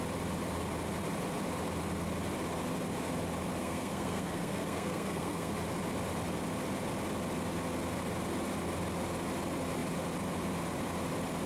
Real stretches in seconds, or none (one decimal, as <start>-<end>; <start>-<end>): 0.0-3.6; 5.5-11.5